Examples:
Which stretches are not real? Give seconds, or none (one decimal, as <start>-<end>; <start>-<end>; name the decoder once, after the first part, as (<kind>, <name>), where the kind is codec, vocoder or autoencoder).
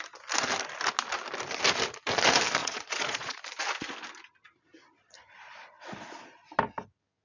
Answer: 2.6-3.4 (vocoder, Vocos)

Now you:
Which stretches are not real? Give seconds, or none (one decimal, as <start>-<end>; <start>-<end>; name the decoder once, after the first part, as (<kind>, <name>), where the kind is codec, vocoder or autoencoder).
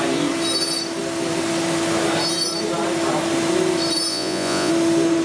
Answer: 4.1-4.7 (vocoder, Vocos)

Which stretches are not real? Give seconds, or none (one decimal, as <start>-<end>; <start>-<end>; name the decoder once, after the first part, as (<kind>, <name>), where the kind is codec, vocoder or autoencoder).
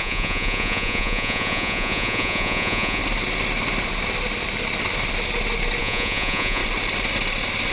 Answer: 0.0-3.0 (vocoder, Vocos); 5.8-6.6